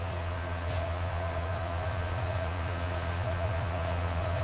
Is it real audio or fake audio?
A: fake